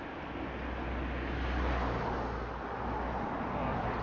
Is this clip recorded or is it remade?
recorded